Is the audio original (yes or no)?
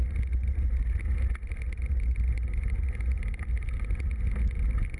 yes